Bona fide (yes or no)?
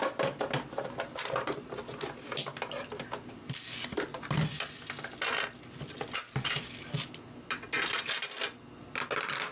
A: yes